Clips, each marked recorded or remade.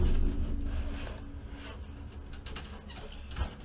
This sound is recorded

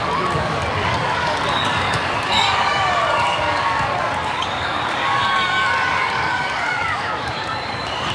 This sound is remade